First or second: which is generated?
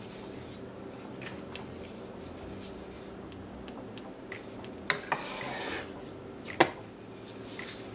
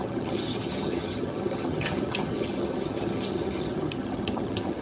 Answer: second